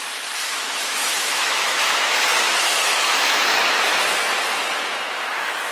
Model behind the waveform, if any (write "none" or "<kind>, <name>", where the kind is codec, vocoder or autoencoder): autoencoder, DAC-VAE